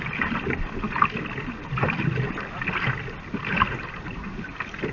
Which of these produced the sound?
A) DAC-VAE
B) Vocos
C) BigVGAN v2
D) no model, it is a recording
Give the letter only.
D